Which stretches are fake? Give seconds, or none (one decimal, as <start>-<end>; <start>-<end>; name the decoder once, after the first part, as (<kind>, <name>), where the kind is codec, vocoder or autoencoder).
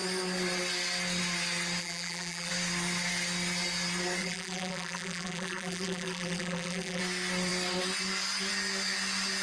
1.8-2.5 (vocoder, BigVGAN v2); 4.2-7.0